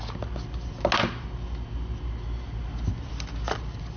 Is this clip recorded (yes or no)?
yes